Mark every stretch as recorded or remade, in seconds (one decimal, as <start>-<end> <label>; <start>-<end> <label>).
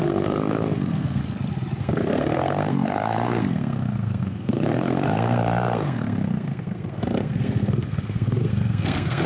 0.0-1.2 remade; 1.2-1.8 recorded; 1.8-9.3 remade